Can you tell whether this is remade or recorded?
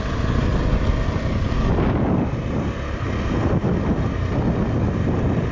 recorded